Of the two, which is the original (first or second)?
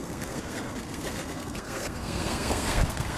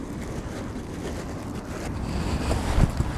second